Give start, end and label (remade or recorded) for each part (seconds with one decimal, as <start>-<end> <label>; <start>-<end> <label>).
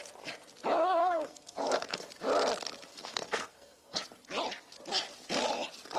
0.0-1.0 recorded; 1.0-2.1 remade; 2.1-2.9 recorded; 2.9-4.0 remade; 4.0-6.0 recorded